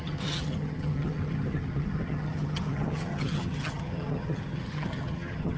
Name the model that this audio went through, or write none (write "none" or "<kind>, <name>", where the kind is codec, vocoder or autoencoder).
vocoder, HiFi-GAN